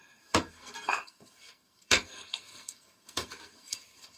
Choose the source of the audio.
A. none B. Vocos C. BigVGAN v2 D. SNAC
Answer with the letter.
D